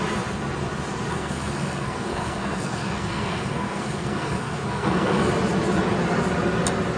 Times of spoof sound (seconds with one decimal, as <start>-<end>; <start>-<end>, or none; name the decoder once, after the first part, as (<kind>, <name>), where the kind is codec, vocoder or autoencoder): 1.1-5.3 (codec, SNAC)